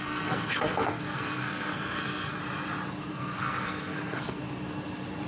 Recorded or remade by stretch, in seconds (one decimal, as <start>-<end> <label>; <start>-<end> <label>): 0.0-2.4 remade; 2.4-3.1 recorded; 3.1-4.4 remade; 4.4-5.3 recorded